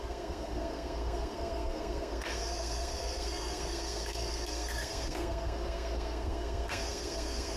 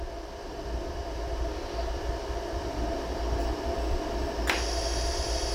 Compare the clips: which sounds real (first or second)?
second